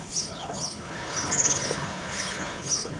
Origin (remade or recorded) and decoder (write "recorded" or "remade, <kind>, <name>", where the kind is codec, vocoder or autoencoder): remade, codec, HILCodec